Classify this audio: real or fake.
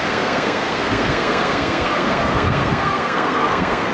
fake